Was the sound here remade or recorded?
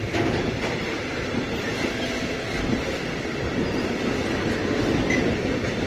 remade